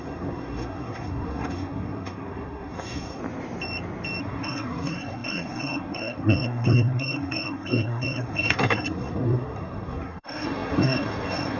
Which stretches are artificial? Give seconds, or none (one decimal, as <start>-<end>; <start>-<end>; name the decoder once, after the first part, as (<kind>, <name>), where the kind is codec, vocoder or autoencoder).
0.0-3.2 (codec, SNAC); 4.2-11.6